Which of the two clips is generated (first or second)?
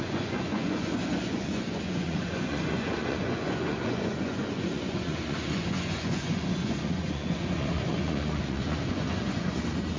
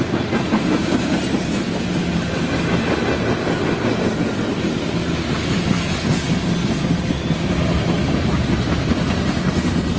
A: first